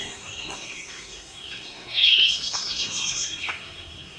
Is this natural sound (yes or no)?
no